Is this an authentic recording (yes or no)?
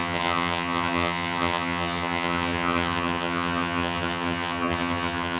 no